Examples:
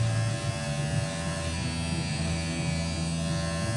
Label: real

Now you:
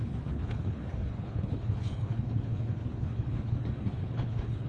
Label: fake